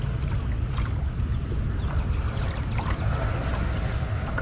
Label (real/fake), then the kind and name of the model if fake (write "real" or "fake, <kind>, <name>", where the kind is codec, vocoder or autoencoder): real